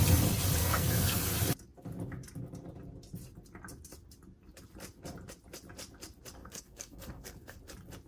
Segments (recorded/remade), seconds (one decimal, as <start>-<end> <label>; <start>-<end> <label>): 0.0-0.6 recorded; 0.6-1.2 remade; 1.2-6.4 recorded; 6.4-7.6 remade; 7.6-8.1 recorded